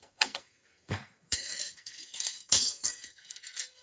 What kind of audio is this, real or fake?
fake